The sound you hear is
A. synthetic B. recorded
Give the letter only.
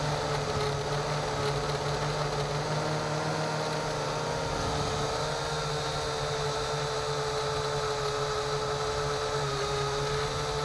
B